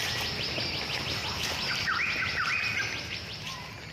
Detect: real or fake real